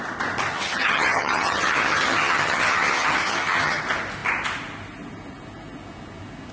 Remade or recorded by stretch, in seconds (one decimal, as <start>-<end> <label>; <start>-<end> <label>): 0.0-0.5 recorded; 0.5-3.8 remade; 3.8-6.5 recorded